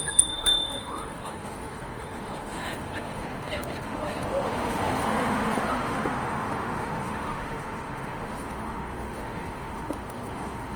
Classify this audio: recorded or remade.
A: remade